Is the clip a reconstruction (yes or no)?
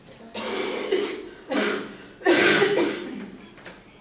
no